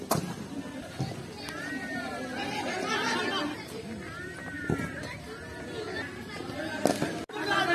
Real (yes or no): yes